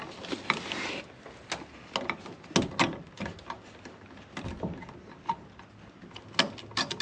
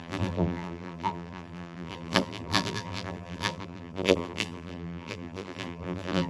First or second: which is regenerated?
second